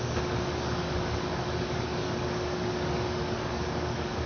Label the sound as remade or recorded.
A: remade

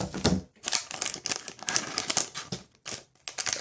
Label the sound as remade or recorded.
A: recorded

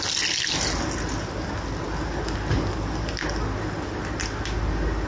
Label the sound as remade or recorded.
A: recorded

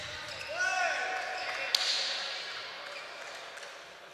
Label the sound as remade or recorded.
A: recorded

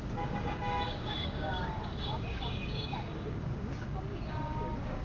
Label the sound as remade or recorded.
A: remade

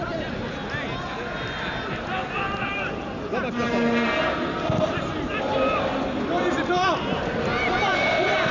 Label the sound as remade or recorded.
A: recorded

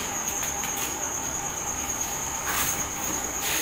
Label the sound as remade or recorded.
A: remade